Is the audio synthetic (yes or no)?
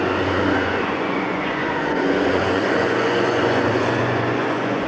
yes